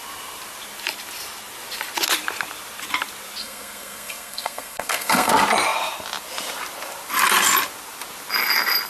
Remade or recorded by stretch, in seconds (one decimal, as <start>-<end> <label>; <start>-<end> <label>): 0.0-3.4 recorded; 3.4-5.3 remade; 5.3-8.9 recorded

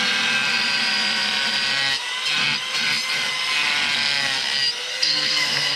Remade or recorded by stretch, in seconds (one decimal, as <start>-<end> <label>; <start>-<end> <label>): 0.0-4.9 recorded; 4.9-5.8 remade

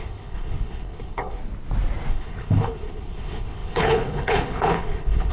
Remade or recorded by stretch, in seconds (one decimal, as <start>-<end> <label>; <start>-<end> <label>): 0.0-1.4 remade; 1.4-2.1 recorded; 2.1-5.3 remade

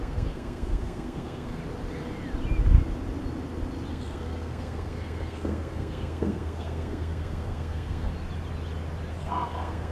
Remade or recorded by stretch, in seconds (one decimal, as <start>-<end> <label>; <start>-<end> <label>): 0.0-1.6 remade; 1.6-3.9 recorded; 3.9-8.1 remade; 8.1-9.1 recorded; 9.1-9.9 remade

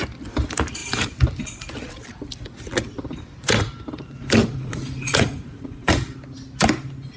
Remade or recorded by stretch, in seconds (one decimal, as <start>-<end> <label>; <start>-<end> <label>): 0.0-4.4 recorded; 4.4-5.9 remade; 5.9-7.2 recorded